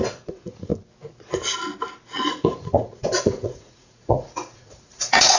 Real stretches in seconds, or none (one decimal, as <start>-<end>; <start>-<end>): 0.7-2.3